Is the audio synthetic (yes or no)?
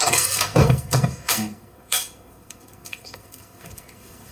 yes